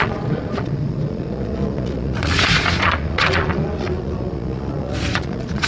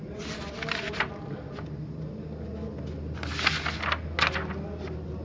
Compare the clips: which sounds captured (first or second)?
second